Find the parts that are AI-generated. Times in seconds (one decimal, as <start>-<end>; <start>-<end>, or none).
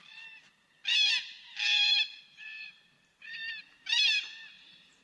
0.0-0.8; 2.2-5.0